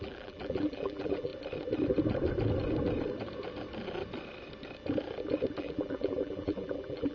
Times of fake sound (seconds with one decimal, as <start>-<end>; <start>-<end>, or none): 0.0-1.3; 5.6-7.1